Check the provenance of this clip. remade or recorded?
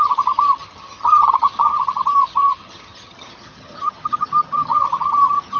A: remade